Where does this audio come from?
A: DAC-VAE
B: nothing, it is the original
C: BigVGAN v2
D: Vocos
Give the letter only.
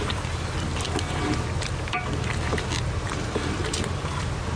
B